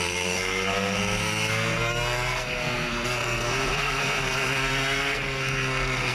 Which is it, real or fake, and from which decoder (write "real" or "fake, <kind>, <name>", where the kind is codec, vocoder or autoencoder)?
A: fake, codec, SNAC